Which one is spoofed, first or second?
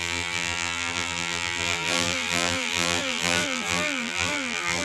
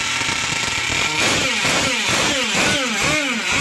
first